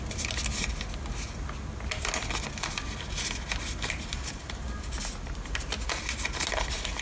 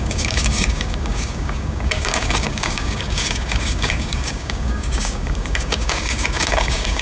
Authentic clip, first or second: first